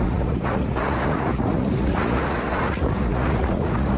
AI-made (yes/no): yes